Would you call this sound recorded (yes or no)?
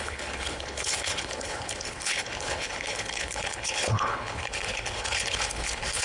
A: no